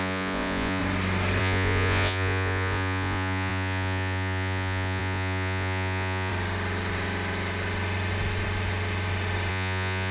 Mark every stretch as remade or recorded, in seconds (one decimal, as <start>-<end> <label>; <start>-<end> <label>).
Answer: 0.0-0.8 remade; 0.8-1.4 recorded; 1.4-6.3 remade; 6.3-9.5 recorded; 9.5-10.1 remade